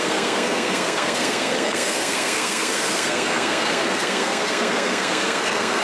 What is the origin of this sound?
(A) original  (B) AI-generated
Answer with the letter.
B